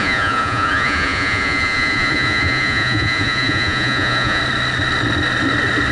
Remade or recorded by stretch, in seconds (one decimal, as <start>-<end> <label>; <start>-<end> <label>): 0.0-4.4 remade; 4.4-5.9 recorded